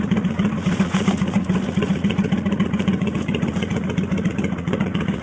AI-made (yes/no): yes